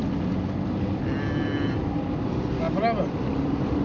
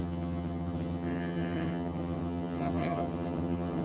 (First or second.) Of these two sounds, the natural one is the first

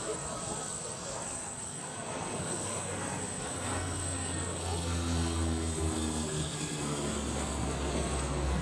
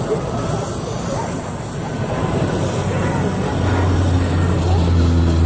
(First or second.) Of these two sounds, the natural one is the second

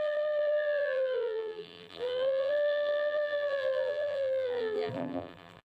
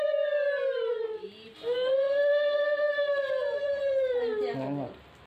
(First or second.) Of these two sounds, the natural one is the second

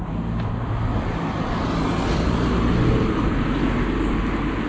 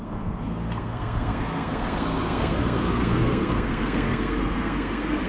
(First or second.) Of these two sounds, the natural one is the first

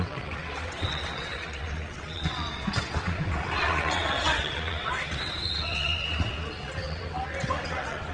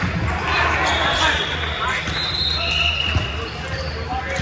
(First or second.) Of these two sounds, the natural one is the second